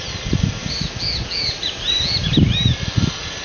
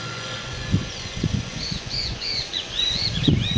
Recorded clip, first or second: first